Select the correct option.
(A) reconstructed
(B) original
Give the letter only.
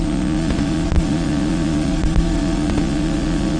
A